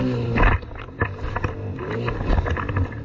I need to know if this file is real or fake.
real